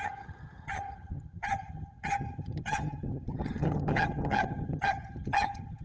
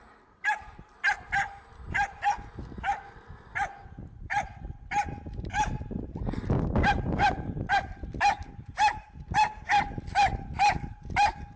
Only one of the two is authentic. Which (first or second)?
second